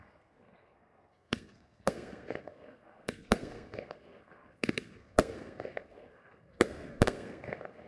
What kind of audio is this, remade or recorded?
remade